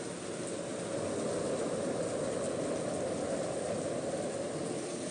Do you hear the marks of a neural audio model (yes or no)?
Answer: no